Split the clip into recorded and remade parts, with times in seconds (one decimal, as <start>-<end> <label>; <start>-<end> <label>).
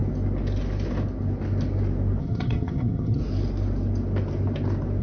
0.0-2.2 recorded; 2.2-3.2 remade; 3.2-5.0 recorded